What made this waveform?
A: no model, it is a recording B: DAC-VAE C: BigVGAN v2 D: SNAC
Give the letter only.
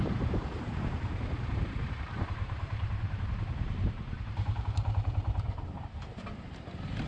C